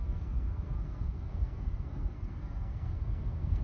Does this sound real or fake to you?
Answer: fake